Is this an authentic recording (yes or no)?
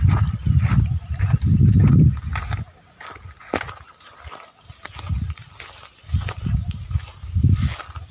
yes